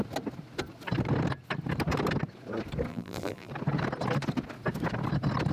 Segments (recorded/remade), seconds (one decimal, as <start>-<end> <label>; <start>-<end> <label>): 0.0-2.9 recorded; 2.9-3.5 remade; 3.5-5.5 recorded